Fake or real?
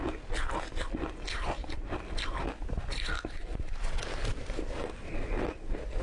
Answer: real